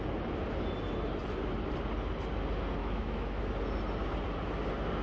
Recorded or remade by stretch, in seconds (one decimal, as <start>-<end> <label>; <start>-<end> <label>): 0.0-2.8 recorded; 2.8-3.4 remade; 3.4-5.0 recorded

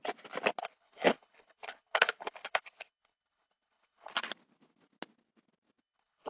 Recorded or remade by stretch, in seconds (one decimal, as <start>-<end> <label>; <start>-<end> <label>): 0.0-0.6 recorded; 0.6-4.1 remade; 4.1-5.8 recorded; 5.8-6.3 remade

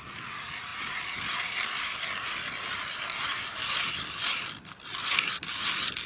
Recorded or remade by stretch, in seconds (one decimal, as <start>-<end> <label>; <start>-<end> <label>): 0.0-6.1 recorded

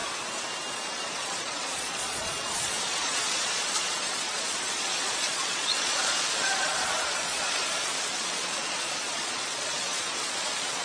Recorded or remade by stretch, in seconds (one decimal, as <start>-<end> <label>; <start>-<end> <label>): 0.0-0.7 recorded; 0.7-10.8 remade

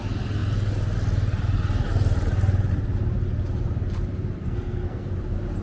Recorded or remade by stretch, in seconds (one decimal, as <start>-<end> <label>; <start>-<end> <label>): 0.0-4.4 recorded; 4.4-5.1 remade; 5.1-5.6 recorded

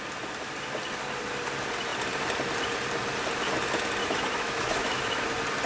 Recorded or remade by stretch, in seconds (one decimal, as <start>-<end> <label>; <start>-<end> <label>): 0.0-4.0 recorded; 4.0-5.2 remade; 5.2-5.7 recorded

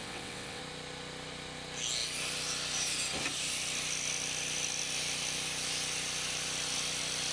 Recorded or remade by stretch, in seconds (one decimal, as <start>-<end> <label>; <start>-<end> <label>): 0.0-0.6 remade; 0.6-7.3 recorded